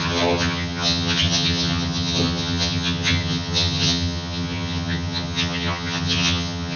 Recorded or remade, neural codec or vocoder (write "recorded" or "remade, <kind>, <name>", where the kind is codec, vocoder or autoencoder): remade, vocoder, HiFi-GAN